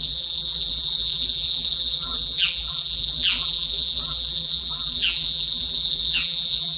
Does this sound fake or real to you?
fake